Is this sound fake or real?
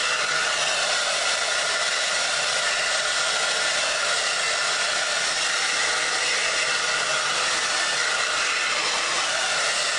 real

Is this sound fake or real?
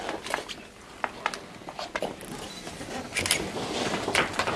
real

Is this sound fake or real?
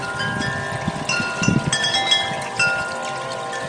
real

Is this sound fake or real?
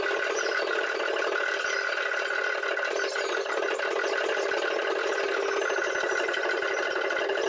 real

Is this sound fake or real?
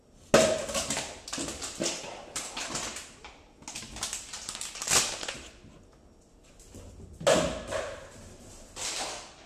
real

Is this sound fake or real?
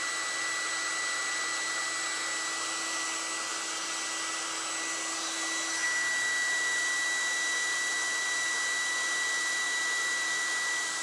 real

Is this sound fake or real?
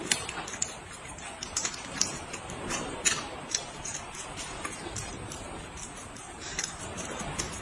fake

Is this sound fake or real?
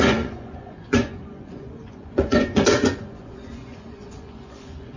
fake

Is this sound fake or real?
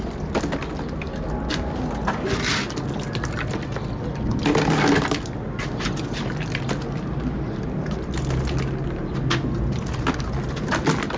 real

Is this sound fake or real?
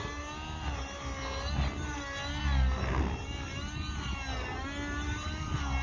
real